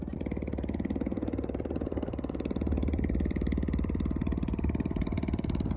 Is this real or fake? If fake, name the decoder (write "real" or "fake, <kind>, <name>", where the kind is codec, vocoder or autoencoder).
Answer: fake, vocoder, BigVGAN v2